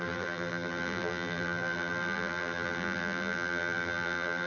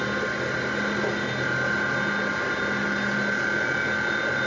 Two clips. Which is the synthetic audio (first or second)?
first